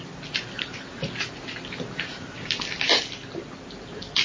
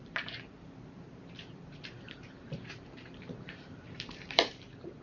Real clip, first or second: first